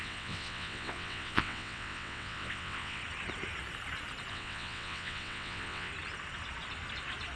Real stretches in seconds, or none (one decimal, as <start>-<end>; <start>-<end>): 3.0-4.3; 5.9-7.4